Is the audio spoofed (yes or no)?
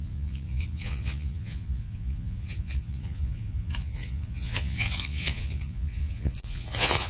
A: yes